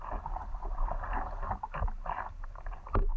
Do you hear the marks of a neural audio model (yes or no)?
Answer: no